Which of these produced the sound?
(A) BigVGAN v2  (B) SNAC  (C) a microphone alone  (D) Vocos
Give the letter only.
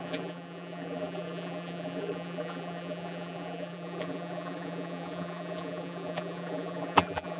A